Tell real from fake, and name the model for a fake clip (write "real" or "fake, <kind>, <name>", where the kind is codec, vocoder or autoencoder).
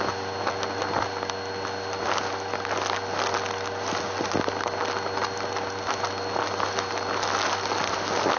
real